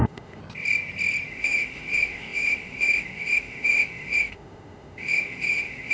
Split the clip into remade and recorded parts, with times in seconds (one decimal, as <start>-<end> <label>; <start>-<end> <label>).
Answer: 0.0-0.4 remade; 0.4-1.3 recorded; 1.3-5.9 remade